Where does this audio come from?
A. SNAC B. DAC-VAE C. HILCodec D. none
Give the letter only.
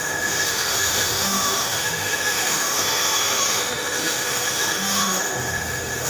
B